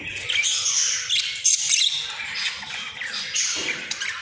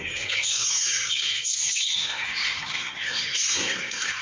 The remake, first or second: second